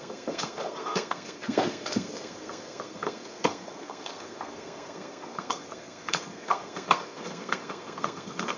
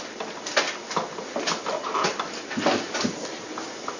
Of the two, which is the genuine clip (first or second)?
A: second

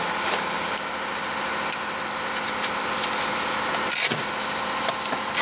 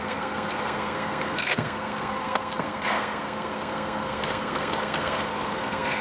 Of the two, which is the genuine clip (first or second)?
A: first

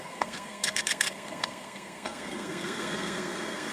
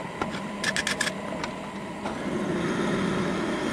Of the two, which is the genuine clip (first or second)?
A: second